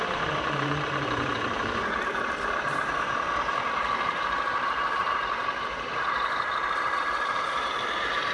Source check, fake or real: fake